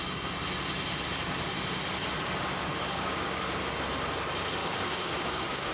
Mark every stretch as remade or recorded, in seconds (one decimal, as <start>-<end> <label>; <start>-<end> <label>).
0.0-2.7 recorded; 2.7-3.4 remade; 3.4-4.6 recorded; 4.6-5.7 remade